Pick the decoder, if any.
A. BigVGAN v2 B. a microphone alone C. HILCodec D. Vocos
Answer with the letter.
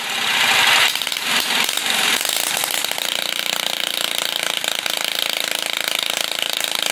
A